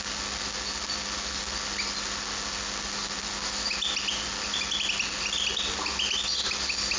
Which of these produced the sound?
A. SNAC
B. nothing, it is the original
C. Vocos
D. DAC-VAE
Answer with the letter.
B